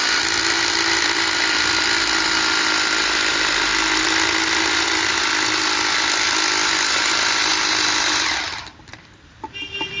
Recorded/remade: recorded